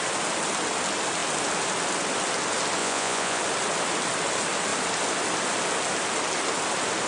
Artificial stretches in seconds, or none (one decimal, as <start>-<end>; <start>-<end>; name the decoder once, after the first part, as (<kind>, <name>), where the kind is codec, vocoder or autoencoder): 2.8-3.4 (vocoder, Vocos)